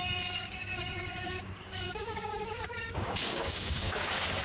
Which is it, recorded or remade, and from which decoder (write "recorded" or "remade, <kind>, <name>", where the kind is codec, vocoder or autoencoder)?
remade, codec, DAC